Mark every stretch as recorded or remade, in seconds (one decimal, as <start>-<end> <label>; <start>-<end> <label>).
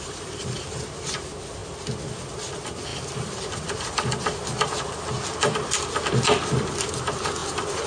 0.0-7.9 recorded